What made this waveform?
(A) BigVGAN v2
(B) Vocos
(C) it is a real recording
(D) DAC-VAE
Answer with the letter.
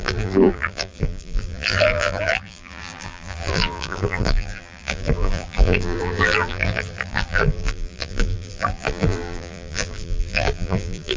A